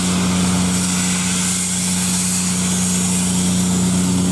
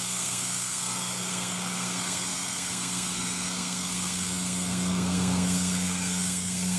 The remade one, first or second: second